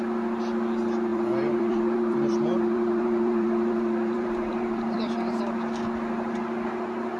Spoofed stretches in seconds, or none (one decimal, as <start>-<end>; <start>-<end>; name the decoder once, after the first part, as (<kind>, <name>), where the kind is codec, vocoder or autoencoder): 1.1-5.4 (vocoder, BigVGAN v2)